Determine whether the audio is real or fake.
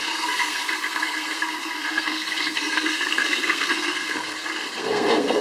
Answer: fake